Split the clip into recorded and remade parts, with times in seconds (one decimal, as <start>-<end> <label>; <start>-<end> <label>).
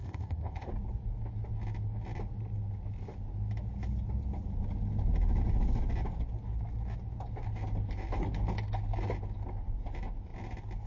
0.0-0.7 remade; 0.7-10.9 recorded